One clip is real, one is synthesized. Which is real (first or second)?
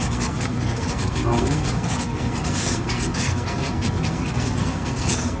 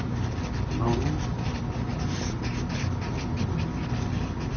second